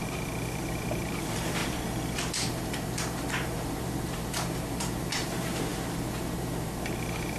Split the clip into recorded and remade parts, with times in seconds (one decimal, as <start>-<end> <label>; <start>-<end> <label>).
0.0-7.4 remade